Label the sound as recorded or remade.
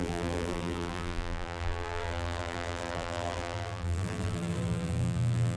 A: remade